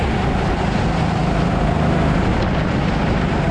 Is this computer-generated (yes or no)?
no